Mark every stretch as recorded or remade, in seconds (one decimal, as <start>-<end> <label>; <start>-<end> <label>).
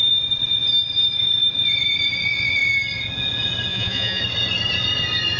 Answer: 0.0-3.7 recorded; 3.7-4.2 remade; 4.2-5.4 recorded